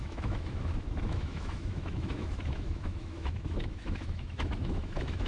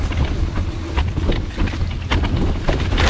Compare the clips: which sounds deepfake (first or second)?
first